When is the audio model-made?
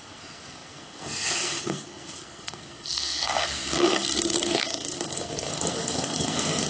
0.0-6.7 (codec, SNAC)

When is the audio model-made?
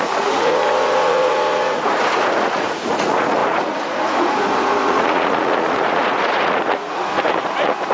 0.0-7.9 (vocoder, Vocos)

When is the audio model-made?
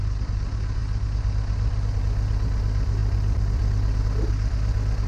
none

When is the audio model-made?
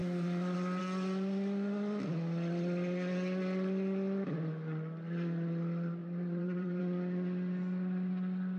6.0-6.8 (vocoder, BigVGAN v2)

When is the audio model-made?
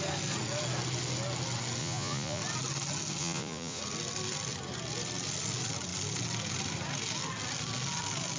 1.8-2.4 (vocoder, Vocos); 3.2-3.8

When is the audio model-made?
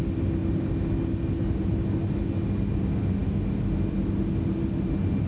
none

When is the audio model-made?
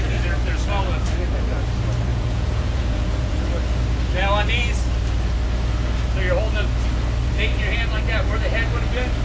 2.1-3.3 (vocoder, Vocos)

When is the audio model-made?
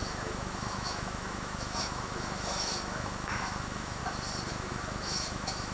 0.0-4.0 (autoencoder, DAC-VAE); 4.5-5.7